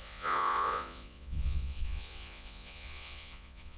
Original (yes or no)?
no